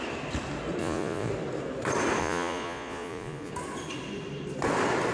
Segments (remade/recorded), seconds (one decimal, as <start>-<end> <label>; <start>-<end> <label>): 0.0-0.8 recorded; 0.8-1.3 remade; 1.3-2.2 recorded; 2.2-3.5 remade; 3.5-5.1 recorded